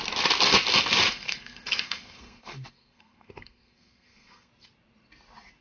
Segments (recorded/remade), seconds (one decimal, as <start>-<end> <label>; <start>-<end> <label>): 0.0-1.1 recorded; 1.1-4.5 remade; 4.5-5.6 recorded